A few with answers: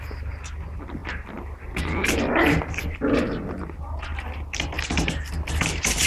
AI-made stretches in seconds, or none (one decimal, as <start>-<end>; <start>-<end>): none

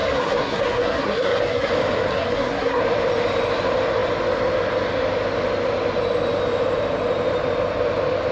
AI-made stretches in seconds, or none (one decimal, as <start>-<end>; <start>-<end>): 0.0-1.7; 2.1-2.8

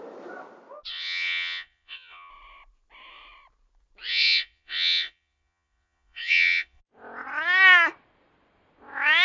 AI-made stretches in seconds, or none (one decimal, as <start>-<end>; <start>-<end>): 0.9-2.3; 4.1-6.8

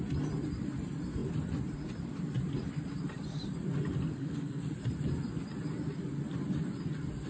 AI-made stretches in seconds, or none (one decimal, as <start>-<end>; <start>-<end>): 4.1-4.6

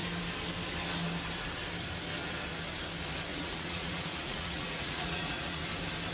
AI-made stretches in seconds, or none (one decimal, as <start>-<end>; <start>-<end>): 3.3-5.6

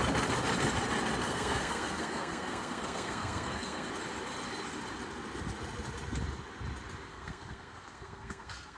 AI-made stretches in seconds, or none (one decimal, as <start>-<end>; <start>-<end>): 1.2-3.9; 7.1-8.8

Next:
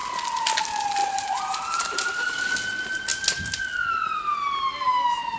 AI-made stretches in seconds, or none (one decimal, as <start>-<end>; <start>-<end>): 1.0-2.3

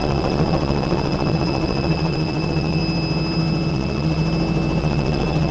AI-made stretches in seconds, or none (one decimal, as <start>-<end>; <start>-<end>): 0.0-2.8; 3.7-4.2; 4.8-5.5